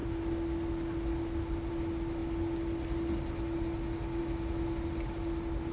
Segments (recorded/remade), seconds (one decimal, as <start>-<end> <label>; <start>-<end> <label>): 0.0-5.7 recorded